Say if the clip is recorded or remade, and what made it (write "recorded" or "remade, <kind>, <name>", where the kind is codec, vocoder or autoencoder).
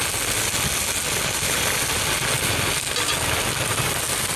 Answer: recorded